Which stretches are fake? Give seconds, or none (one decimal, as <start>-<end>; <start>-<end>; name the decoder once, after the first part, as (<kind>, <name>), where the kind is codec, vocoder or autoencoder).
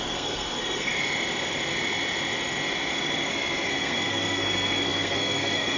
0.0-0.9 (codec, SNAC); 3.7-5.8